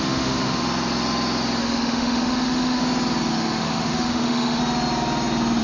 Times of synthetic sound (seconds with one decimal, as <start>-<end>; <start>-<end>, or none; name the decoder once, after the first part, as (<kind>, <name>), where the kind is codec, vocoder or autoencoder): 0.0-0.6 (autoencoder, DAC-VAE); 1.6-2.8; 3.3-4.6